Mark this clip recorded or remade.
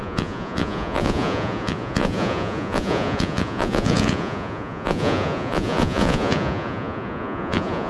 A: remade